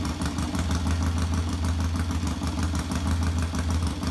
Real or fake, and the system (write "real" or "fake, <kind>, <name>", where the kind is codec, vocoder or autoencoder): real